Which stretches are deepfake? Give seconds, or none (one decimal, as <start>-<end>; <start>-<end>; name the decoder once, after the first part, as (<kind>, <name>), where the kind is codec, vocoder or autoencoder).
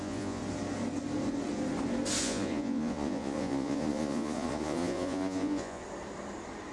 0.0-0.4 (vocoder, Vocos); 2.2-5.8